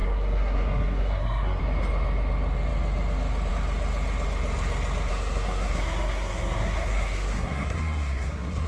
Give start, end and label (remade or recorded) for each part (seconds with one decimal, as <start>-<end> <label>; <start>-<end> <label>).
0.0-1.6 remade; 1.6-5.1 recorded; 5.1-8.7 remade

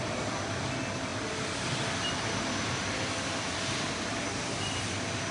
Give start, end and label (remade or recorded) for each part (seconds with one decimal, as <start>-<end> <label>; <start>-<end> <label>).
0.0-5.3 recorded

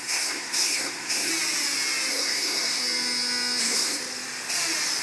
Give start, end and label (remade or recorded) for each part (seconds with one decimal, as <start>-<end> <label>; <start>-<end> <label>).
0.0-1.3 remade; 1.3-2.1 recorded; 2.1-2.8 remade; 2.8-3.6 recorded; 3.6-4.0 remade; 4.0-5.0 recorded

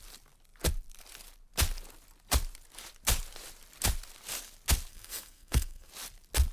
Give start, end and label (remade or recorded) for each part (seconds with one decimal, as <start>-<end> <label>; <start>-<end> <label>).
0.0-4.9 recorded; 4.9-5.9 remade; 5.9-6.5 recorded